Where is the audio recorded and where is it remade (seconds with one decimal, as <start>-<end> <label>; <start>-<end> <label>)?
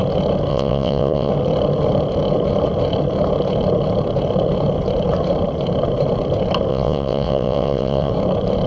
0.0-0.5 recorded; 0.5-1.3 remade; 1.3-6.7 recorded; 6.7-8.1 remade; 8.1-8.7 recorded